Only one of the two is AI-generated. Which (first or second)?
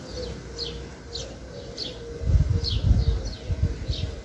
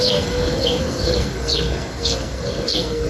second